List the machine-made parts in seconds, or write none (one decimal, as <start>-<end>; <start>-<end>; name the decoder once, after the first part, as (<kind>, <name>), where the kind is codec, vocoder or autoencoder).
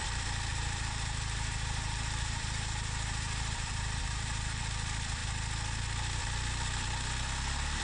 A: 0.5-4.6 (vocoder, BigVGAN v2)